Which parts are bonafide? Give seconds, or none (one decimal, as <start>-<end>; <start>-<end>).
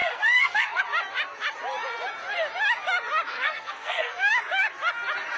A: 0.8-3.3; 4.3-5.4